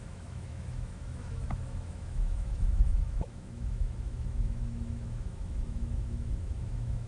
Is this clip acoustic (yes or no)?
no